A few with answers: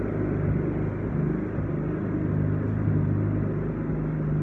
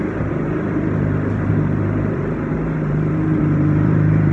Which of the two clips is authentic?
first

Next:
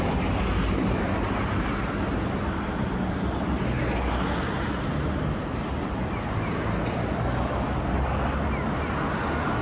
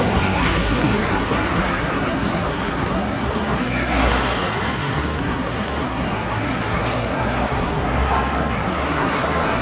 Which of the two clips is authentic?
first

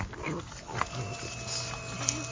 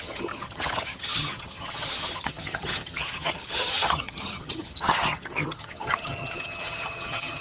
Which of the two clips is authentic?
first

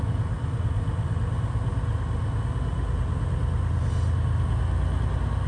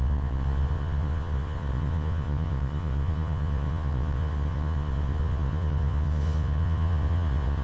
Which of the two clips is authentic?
first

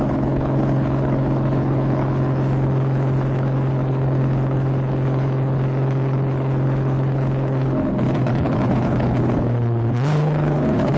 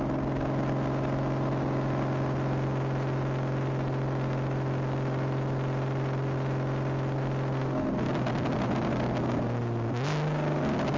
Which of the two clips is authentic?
second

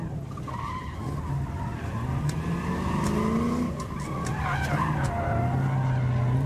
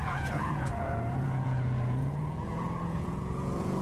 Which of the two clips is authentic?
first